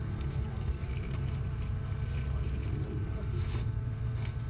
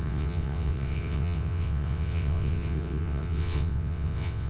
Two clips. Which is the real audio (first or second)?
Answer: first